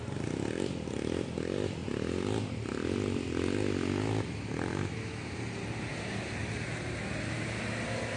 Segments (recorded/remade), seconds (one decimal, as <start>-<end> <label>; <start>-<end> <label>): 0.0-4.7 recorded; 4.7-5.4 remade; 5.4-8.2 recorded